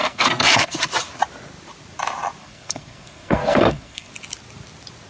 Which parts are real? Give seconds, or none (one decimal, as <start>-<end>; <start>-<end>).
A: 0.8-2.4; 4.1-5.1